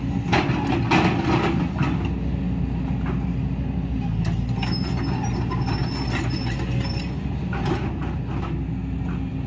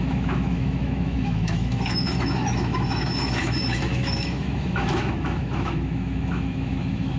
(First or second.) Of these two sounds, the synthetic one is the second